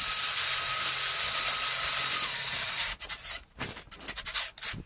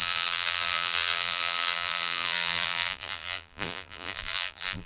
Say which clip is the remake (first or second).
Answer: second